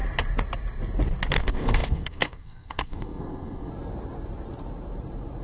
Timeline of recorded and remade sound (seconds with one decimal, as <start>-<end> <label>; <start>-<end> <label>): 0.0-1.4 recorded; 1.4-3.7 remade; 3.7-5.4 recorded

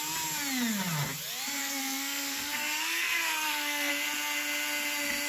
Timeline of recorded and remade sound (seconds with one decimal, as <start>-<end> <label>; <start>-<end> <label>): 0.0-1.6 recorded; 1.6-3.9 remade; 3.9-5.3 recorded

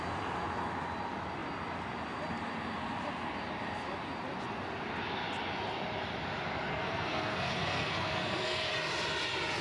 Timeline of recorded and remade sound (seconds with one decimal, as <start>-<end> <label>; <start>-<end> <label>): 0.0-6.7 recorded; 6.7-8.7 remade; 8.7-9.6 recorded

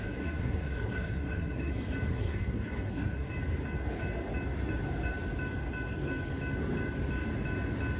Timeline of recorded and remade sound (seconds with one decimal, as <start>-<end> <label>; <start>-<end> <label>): 0.0-1.7 remade; 1.7-2.1 recorded; 2.1-3.3 remade; 3.3-8.0 recorded

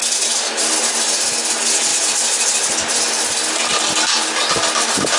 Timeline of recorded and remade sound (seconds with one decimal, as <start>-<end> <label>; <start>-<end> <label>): 0.0-5.2 recorded